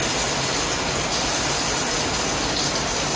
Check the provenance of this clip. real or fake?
real